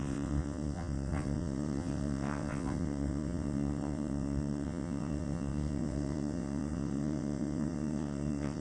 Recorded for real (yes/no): no